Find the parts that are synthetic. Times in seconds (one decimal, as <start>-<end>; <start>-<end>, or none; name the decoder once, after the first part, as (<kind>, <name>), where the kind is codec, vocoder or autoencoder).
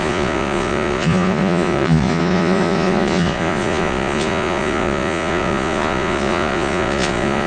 0.0-7.5 (vocoder, Vocos)